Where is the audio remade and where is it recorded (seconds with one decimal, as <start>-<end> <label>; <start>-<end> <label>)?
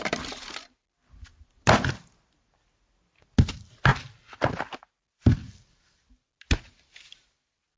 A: 0.0-7.8 recorded